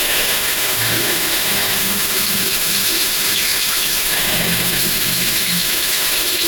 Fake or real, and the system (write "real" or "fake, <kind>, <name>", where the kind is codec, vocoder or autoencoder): fake, autoencoder, DAC-VAE